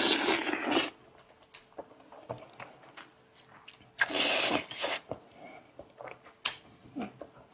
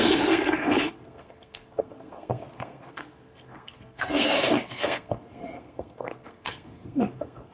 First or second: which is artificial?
second